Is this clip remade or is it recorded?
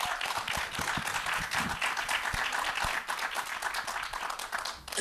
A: recorded